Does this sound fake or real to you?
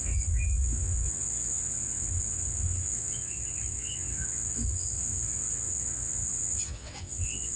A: fake